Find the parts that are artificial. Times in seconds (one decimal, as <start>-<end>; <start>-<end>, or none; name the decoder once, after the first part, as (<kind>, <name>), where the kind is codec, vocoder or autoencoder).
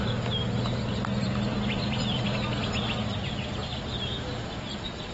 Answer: 1.5-2.2 (vocoder, BigVGAN v2); 3.6-5.1